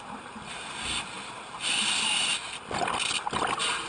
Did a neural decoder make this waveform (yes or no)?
no